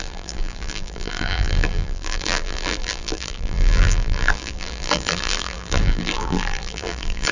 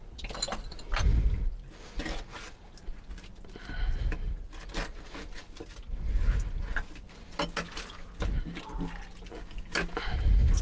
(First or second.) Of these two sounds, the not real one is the first